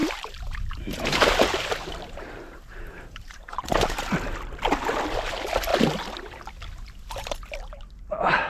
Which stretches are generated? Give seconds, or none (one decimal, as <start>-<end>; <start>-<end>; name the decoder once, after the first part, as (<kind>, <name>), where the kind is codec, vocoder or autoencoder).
0.0-4.1 (vocoder, BigVGAN v2)